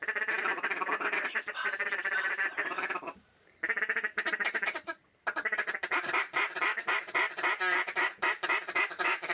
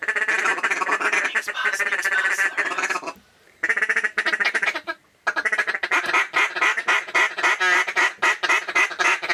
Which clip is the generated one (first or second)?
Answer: first